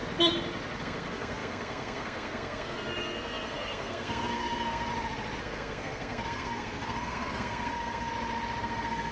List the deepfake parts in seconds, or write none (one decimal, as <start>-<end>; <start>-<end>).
0.8-4.9; 5.4-8.1; 8.6-9.1